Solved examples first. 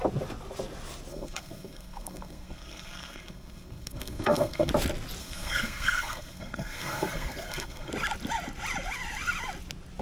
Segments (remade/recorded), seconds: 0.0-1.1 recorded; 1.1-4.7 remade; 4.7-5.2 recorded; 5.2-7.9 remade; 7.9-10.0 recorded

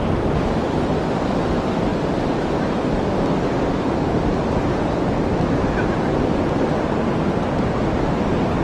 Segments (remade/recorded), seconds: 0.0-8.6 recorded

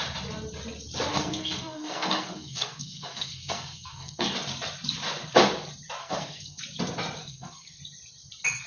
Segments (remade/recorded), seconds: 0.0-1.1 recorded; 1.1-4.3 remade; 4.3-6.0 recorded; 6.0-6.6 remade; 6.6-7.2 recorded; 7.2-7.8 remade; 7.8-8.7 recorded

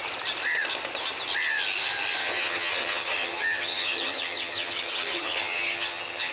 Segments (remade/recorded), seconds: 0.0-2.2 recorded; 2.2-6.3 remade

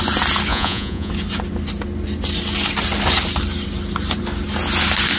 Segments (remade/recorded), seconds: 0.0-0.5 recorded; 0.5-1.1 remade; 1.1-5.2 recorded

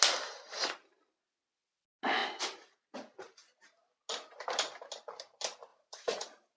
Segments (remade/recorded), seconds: 0.0-5.7 recorded; 5.7-6.6 remade

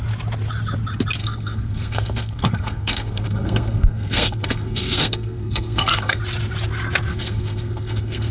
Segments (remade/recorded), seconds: 0.0-1.2 recorded; 1.2-6.2 remade; 6.2-7.1 recorded; 7.1-8.3 remade